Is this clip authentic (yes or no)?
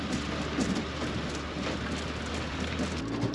no